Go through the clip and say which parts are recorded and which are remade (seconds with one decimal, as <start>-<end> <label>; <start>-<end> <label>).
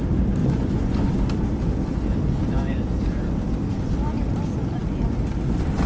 0.0-0.4 recorded; 0.4-1.1 remade; 1.1-5.9 recorded